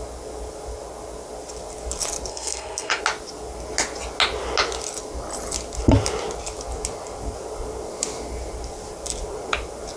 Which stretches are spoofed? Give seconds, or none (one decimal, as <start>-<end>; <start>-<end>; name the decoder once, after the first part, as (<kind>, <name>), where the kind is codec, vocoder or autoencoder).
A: 2.3-3.0 (codec, SNAC)